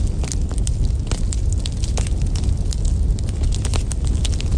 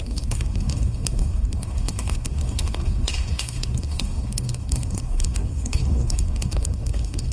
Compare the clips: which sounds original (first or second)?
first